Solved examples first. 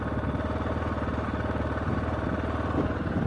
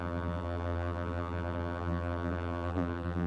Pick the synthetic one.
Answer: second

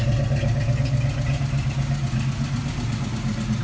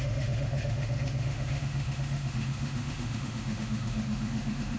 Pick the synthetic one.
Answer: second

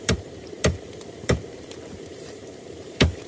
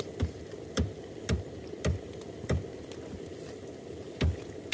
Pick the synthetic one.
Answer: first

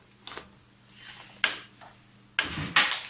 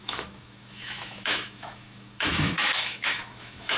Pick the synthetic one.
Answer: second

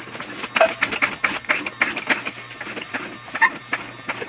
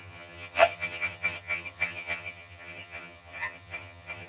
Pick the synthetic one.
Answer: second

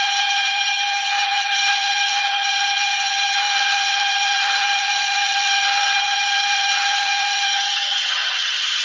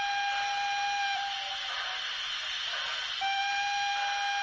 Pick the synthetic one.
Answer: first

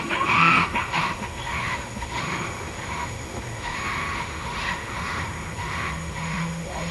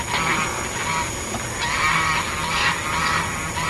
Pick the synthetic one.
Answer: first